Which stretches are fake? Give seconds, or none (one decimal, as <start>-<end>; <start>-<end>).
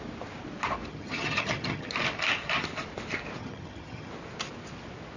0.9-1.9; 3.4-4.1